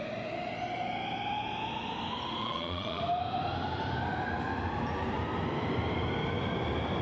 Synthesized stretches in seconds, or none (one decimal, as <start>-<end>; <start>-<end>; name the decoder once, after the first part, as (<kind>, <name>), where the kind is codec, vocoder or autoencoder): 2.4-3.0 (vocoder, Vocos)